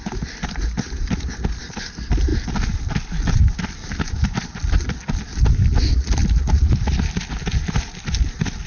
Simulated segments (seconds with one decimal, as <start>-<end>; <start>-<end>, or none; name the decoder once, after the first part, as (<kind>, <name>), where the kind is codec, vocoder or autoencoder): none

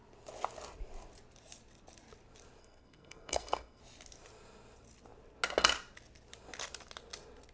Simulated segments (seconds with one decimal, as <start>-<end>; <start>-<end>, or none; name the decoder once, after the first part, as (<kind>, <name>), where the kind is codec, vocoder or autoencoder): 2.6-3.8 (codec, SNAC)

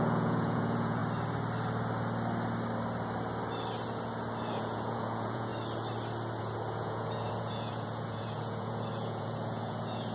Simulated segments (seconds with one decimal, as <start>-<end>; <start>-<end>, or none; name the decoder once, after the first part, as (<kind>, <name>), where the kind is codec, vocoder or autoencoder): 0.0-1.0 (vocoder, Vocos); 4.5-5.5; 6.4-10.1

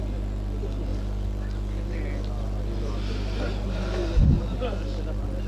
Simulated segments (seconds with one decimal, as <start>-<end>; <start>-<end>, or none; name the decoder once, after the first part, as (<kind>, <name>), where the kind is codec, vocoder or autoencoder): none